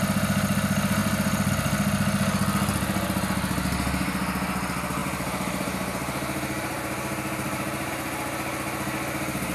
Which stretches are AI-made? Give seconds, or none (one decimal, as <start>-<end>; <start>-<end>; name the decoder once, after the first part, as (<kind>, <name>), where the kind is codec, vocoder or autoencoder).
5.0-7.9 (vocoder, BigVGAN v2)